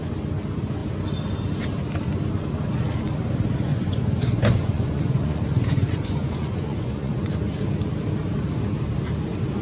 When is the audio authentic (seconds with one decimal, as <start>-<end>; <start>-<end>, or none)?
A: 0.0-3.7; 7.3-9.6